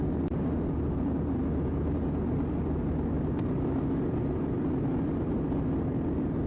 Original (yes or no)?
yes